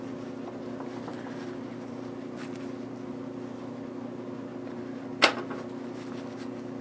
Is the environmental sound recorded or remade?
recorded